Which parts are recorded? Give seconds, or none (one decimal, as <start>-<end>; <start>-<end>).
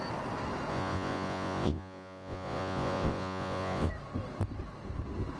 0.0-0.7; 3.9-5.4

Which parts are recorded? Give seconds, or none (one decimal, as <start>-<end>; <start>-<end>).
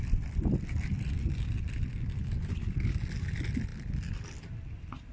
0.0-0.9; 1.6-5.1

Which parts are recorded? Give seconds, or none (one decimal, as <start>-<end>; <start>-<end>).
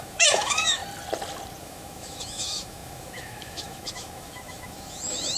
0.8-1.6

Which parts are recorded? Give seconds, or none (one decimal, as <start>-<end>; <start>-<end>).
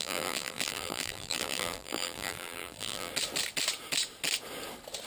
3.1-5.1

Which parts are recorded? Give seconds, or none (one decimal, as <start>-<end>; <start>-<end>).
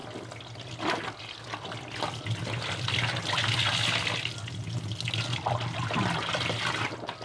0.0-7.2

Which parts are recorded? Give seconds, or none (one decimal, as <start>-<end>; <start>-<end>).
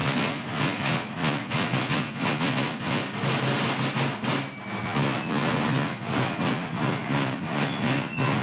3.0-4.8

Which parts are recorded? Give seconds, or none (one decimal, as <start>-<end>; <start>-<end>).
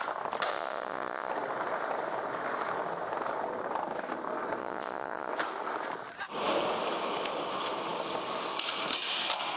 0.0-0.5; 1.3-4.6; 5.3-9.6